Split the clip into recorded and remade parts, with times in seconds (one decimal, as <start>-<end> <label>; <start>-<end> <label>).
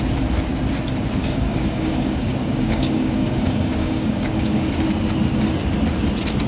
0.0-1.2 recorded; 1.2-4.7 remade; 4.7-6.5 recorded